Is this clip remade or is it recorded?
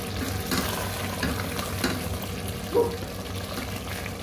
recorded